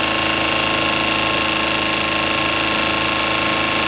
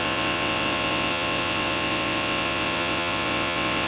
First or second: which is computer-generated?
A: second